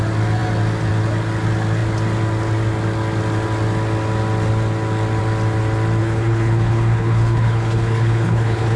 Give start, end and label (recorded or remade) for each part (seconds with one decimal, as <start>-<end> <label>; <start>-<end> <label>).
0.0-6.0 recorded; 6.0-8.8 remade